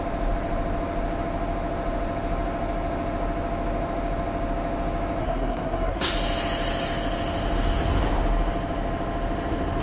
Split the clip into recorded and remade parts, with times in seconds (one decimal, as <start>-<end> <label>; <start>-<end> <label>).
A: 0.0-5.2 recorded; 5.2-6.1 remade; 6.1-9.8 recorded